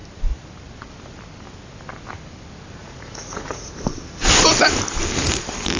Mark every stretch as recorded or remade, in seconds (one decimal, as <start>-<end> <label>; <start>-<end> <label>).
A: 0.0-2.8 recorded; 2.8-3.7 remade; 3.7-5.8 recorded